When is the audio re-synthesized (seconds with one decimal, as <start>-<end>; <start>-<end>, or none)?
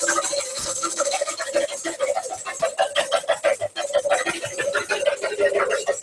0.5-1.3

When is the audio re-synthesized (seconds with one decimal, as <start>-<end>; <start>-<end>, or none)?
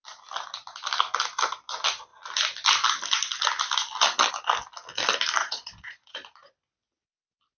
5.4-6.5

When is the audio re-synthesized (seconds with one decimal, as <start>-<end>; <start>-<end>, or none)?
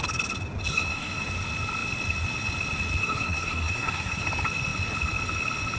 0.7-1.2; 3.0-4.2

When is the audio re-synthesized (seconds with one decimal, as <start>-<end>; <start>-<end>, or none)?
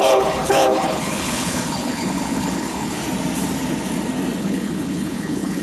0.0-3.0; 4.4-5.6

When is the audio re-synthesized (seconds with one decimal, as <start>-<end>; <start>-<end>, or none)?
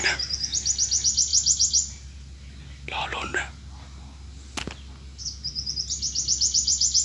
none